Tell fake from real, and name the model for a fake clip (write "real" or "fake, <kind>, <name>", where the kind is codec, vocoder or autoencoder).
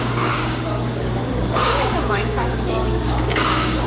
fake, codec, DAC